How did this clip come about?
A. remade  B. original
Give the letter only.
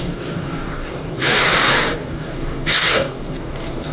A